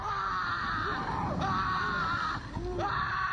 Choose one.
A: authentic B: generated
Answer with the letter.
A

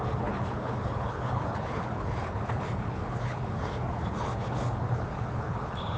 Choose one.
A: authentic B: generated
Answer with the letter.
B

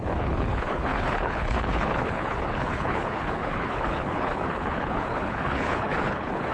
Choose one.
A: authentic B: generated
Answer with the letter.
B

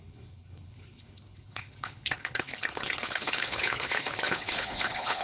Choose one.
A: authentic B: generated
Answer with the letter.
B